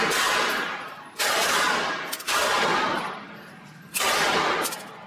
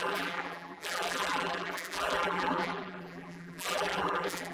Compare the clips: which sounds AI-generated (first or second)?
second